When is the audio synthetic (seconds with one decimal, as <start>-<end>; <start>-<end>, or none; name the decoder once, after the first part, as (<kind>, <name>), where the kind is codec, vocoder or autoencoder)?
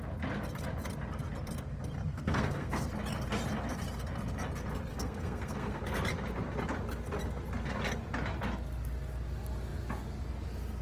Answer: 2.1-2.9 (codec, SNAC); 4.9-5.8